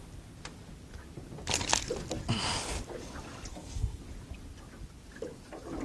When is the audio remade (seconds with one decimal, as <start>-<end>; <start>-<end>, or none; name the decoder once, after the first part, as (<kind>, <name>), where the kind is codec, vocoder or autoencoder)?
3.5-4.0 (codec, SNAC)